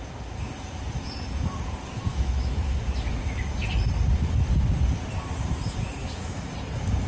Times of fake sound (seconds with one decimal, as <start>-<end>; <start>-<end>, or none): 2.1-2.8; 6.0-6.5

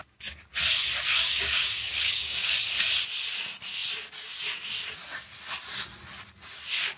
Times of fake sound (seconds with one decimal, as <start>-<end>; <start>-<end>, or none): 1.1-2.5

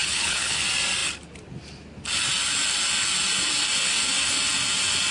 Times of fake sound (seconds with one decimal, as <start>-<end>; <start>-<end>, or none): 0.0-0.6